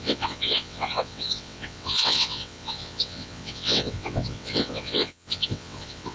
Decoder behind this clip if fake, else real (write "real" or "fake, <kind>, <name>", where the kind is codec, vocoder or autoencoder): fake, vocoder, WaveNeXt